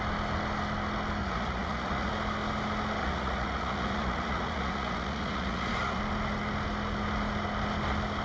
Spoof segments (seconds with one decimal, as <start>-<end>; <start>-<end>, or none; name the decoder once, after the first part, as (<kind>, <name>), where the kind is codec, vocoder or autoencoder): 1.2-2.1 (vocoder, Vocos); 3.0-6.0